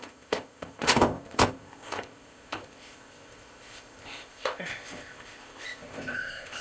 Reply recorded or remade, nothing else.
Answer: remade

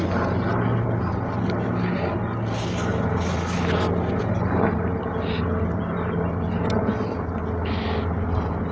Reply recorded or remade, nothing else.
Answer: recorded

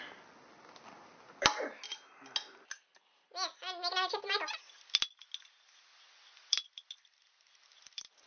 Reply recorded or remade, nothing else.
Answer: recorded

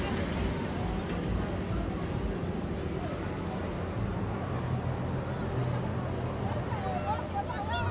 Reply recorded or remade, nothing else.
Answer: recorded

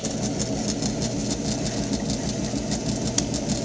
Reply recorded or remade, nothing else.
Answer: recorded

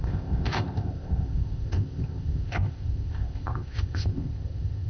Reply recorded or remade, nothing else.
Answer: remade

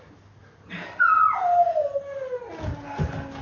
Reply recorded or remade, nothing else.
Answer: recorded